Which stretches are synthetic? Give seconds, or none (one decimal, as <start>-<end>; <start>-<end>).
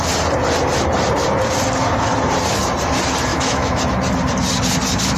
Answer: 3.3-3.8